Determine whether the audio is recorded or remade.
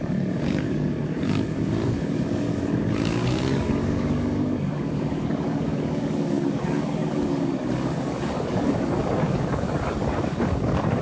remade